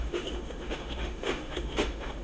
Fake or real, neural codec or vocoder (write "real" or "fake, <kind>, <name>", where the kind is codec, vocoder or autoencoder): fake, autoencoder, DAC-VAE